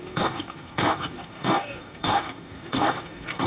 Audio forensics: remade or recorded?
remade